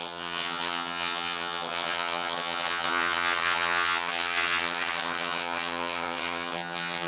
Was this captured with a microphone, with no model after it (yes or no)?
no